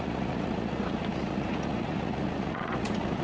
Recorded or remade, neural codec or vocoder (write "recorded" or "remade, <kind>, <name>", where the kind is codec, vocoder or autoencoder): remade, vocoder, Vocos